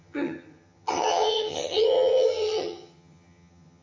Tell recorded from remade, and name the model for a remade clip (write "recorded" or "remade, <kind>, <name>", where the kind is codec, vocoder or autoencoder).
remade, vocoder, HiFi-GAN